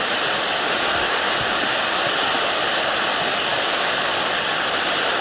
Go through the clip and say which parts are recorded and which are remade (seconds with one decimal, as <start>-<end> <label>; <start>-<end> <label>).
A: 0.0-5.2 recorded